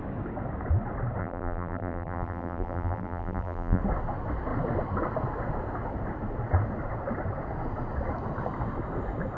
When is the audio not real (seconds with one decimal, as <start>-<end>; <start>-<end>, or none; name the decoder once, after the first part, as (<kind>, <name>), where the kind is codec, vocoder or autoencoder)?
1.2-3.8 (vocoder, BigVGAN v2)

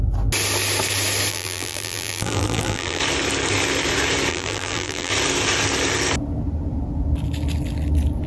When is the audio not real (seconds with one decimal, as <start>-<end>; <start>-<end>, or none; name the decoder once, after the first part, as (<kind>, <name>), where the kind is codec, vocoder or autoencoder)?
1.3-3.0 (vocoder, BigVGAN v2); 4.3-5.1

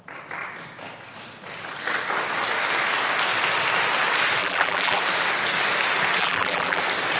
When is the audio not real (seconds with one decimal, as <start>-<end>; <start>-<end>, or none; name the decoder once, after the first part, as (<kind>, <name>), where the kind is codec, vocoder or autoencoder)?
4.4-5.0 (vocoder, BigVGAN v2); 6.2-6.8